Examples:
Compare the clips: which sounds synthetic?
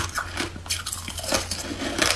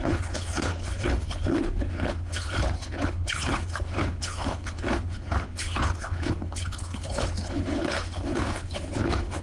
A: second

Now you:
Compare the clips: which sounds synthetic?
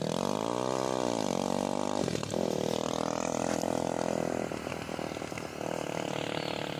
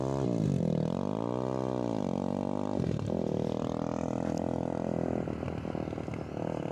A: first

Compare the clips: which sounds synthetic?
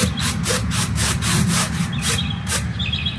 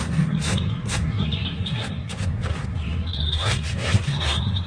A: second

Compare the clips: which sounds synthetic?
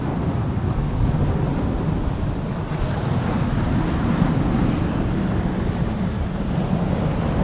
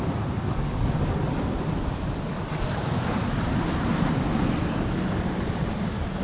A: second